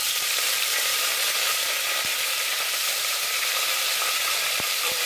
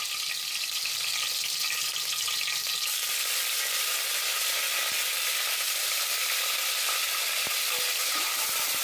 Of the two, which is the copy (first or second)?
first